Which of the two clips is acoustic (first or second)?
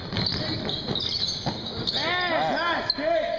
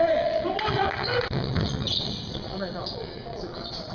first